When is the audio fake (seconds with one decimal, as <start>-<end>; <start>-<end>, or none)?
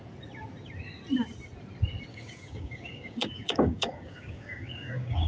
2.1-5.3